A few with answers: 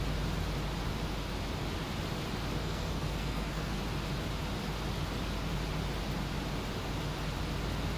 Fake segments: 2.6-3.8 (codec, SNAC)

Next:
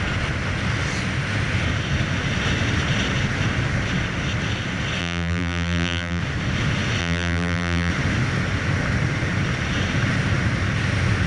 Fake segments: 5.0-6.2 (vocoder, BigVGAN v2); 7.0-7.9

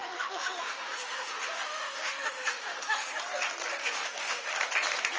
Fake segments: 0.0-3.1 (autoencoder, DAC-VAE); 3.8-4.5

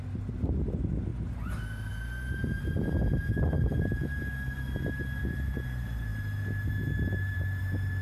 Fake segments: none